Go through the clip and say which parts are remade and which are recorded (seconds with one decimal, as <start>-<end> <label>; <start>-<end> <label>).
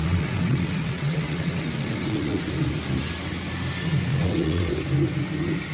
0.0-2.5 remade; 2.5-4.1 recorded; 4.1-4.7 remade; 4.7-5.7 recorded